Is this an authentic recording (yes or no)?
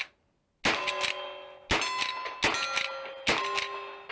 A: yes